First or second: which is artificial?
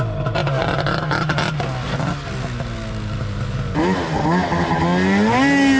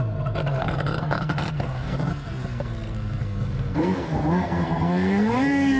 second